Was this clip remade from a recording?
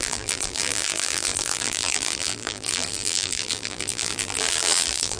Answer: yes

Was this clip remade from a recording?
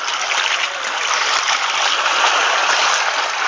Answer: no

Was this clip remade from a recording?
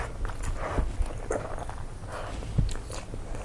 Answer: no